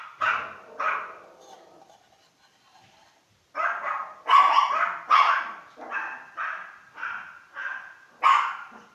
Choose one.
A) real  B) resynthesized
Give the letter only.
A